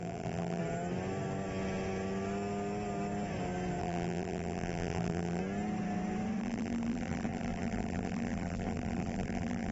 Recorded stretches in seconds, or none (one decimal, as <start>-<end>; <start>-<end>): 0.6-3.8; 5.4-6.4

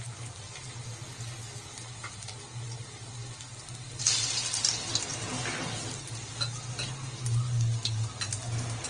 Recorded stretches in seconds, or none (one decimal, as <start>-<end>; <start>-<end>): 0.0-8.9